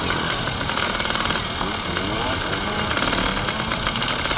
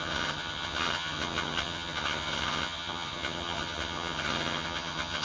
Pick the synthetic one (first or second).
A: second